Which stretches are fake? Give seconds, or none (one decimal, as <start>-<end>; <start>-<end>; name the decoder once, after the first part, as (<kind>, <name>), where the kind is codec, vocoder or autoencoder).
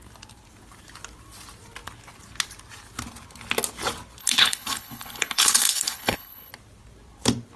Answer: 4.2-6.5 (codec, HILCodec)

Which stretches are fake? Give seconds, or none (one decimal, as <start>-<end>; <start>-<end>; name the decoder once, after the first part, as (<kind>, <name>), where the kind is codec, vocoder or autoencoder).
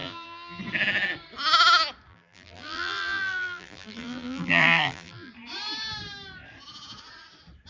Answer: 0.0-0.6 (vocoder, BigVGAN v2); 2.1-5.3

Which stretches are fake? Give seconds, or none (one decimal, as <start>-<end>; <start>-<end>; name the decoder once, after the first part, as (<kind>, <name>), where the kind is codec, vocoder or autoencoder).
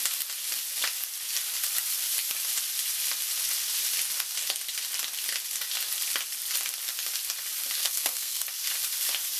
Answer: 7.8-8.4 (codec, SNAC)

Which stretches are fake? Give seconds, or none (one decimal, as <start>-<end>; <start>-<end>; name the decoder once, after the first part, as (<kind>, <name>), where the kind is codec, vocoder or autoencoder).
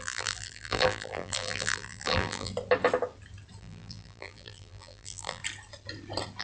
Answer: 0.0-2.5 (vocoder, BigVGAN v2); 3.6-5.4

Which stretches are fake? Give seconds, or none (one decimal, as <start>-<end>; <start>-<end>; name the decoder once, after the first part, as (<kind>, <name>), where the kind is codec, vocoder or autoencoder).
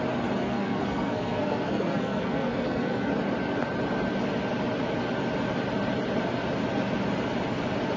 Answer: 0.4-3.1 (codec, SNAC)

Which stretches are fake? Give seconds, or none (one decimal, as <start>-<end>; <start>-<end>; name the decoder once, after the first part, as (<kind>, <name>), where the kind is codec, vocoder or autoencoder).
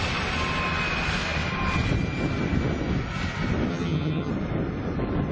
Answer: 3.7-4.3 (vocoder, HiFi-GAN)